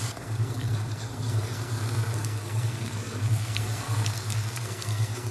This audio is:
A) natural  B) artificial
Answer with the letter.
B